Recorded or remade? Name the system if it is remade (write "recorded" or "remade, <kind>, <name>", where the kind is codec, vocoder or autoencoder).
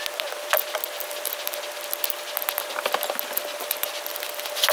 recorded